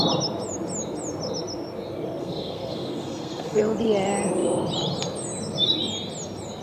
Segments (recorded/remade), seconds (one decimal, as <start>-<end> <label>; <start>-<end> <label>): 0.0-2.2 recorded; 2.2-3.6 remade; 3.6-6.6 recorded